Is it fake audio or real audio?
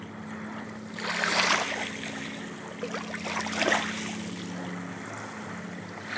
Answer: real